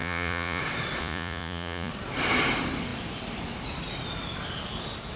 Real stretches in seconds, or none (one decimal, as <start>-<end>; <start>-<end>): 0.6-1.0; 1.9-5.2

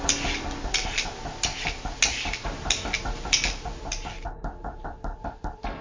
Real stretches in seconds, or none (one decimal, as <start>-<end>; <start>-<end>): 0.8-4.3

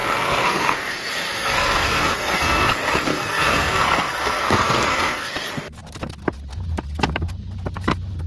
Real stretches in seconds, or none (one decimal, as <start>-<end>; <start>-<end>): 2.7-3.1; 5.3-8.3

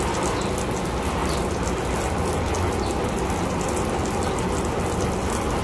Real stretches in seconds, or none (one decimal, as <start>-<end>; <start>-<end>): 0.0-5.6

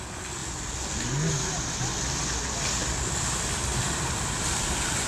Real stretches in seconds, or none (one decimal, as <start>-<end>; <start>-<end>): 0.0-2.8